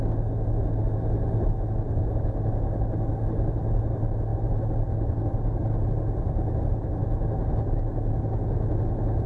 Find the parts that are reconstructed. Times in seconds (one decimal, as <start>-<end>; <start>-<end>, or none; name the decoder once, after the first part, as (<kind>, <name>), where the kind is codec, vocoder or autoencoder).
none